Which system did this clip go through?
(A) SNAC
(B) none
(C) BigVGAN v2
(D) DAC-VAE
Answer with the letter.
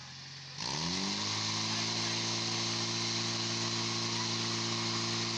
B